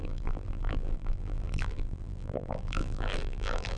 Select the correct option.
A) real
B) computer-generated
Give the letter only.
B